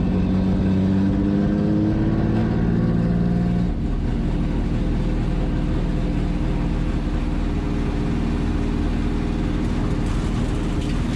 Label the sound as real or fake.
real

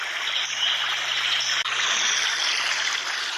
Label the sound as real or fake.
real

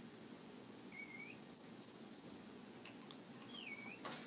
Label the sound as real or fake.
fake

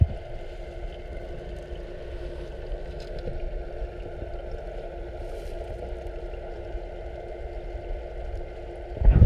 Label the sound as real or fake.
real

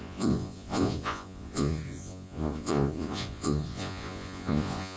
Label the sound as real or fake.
fake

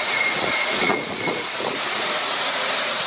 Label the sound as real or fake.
fake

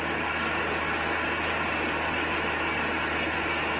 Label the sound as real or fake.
real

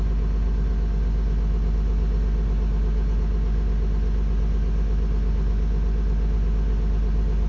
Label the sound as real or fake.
real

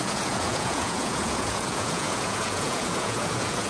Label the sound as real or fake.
fake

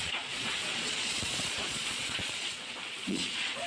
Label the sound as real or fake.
fake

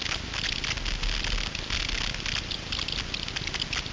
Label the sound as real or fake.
real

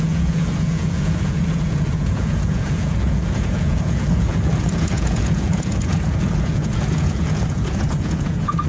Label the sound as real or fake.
fake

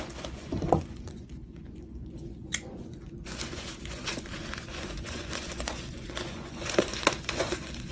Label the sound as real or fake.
fake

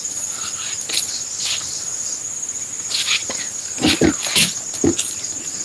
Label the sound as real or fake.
real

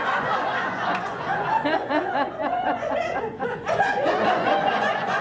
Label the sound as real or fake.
fake